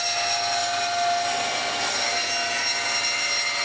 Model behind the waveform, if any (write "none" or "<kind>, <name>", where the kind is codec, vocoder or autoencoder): none